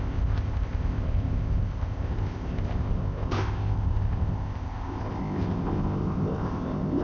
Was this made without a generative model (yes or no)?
no